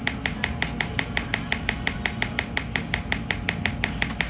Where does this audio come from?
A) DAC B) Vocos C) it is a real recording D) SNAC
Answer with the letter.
C